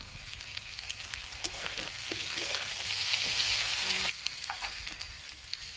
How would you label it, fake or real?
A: fake